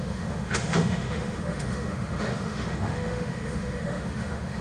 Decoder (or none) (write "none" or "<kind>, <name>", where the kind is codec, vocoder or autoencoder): autoencoder, DAC-VAE